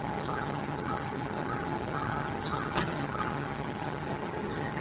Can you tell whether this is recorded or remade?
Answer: remade